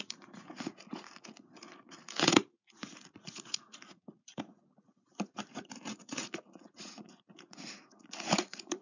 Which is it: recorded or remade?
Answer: remade